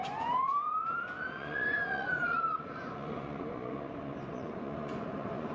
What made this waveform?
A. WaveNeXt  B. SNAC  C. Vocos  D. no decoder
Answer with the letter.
C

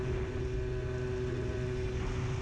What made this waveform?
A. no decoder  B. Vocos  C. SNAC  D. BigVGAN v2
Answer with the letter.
A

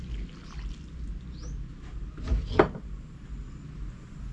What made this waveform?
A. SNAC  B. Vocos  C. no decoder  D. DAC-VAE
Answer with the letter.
C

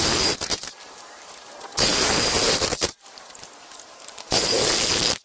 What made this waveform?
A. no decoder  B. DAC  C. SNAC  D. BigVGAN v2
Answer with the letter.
D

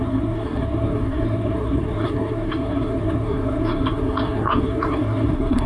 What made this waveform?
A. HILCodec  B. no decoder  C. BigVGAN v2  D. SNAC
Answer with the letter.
D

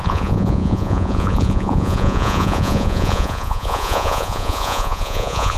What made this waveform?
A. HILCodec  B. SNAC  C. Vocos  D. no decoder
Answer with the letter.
C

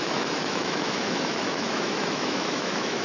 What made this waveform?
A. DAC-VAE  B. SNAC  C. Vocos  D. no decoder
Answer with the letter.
A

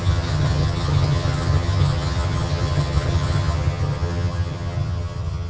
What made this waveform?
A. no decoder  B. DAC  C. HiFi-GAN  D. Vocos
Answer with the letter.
C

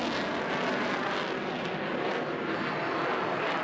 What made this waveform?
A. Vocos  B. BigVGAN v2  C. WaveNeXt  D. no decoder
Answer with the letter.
D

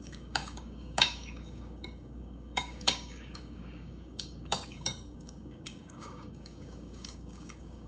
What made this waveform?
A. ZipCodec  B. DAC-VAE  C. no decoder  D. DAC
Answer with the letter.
D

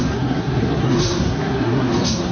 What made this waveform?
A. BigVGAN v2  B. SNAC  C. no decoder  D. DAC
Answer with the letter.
B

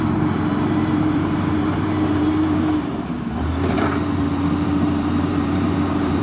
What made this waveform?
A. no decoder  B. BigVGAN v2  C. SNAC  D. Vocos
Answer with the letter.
B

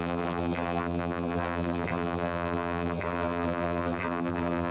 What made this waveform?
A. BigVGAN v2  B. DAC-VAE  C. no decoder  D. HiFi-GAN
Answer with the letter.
A